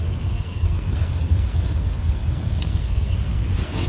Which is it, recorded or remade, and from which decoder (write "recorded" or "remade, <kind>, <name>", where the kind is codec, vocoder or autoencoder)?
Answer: remade, codec, SNAC